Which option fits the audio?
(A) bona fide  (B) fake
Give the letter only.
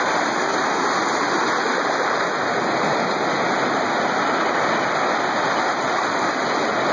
A